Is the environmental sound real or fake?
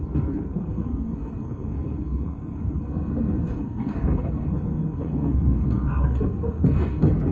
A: fake